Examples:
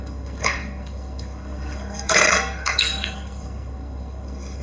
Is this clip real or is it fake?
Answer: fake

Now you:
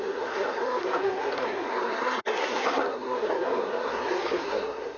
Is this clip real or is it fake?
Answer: fake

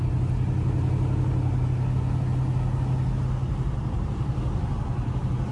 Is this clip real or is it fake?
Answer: real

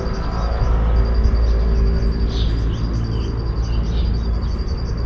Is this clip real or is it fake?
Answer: real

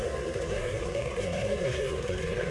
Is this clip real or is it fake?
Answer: fake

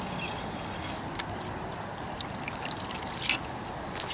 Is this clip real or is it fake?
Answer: real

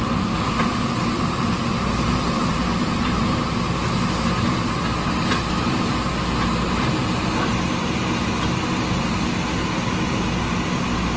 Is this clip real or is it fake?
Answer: real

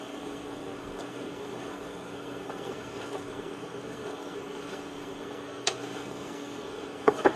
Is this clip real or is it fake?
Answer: fake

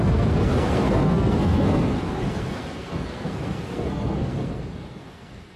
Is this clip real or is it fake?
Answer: fake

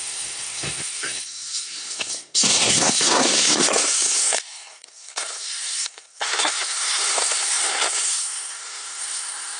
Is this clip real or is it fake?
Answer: fake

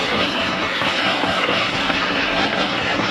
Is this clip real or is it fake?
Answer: fake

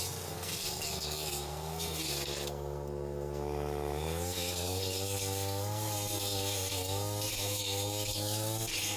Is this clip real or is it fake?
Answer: fake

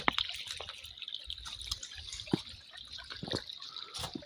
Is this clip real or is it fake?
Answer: real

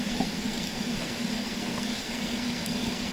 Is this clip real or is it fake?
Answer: fake